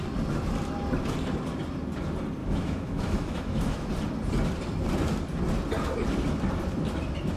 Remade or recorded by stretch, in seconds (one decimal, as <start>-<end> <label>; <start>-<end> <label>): 0.0-2.4 recorded; 2.4-3.9 remade; 3.9-7.4 recorded